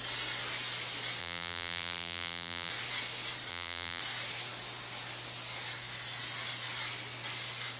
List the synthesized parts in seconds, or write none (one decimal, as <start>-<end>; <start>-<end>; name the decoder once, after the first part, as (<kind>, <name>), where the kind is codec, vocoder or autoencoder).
1.2-2.7 (vocoder, BigVGAN v2); 3.5-4.0